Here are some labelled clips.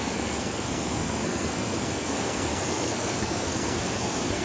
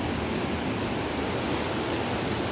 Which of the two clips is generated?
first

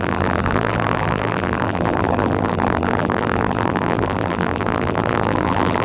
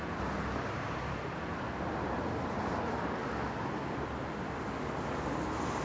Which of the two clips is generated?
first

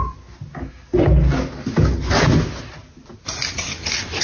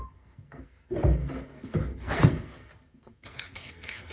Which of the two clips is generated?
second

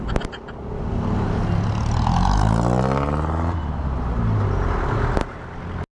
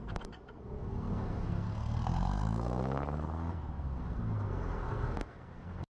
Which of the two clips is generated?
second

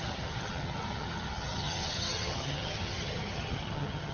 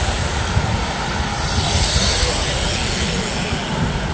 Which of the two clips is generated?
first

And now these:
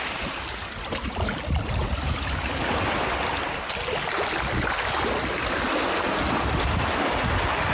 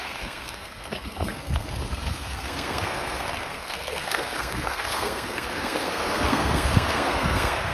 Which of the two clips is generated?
second